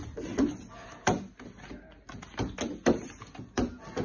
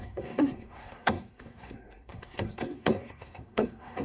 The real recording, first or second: first